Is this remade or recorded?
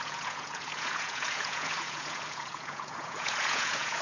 remade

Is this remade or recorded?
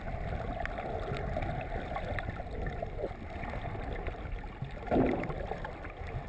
recorded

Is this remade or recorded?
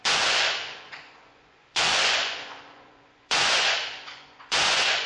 remade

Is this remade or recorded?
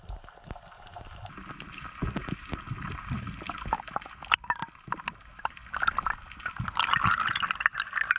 recorded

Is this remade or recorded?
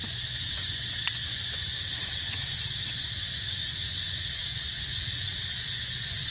remade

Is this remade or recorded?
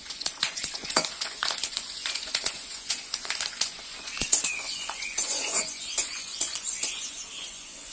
remade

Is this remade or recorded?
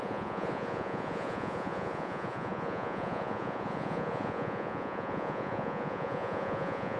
remade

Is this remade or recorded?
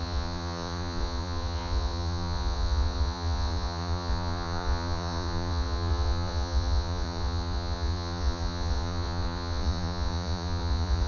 remade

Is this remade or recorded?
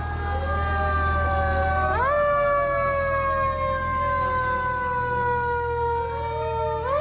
recorded